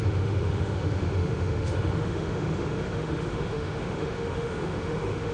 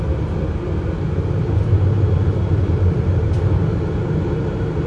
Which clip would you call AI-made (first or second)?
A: first